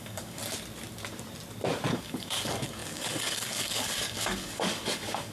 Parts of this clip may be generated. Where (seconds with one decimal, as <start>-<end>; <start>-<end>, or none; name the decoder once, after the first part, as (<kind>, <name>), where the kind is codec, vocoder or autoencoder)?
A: 0.0-0.4 (codec, DAC); 1.9-5.3